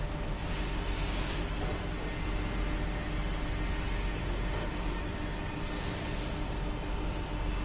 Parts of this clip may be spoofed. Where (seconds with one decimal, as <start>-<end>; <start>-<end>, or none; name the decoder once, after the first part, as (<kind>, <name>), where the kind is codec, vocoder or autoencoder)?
none